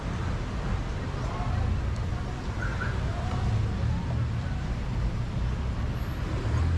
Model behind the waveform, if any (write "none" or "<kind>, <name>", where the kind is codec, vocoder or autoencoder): none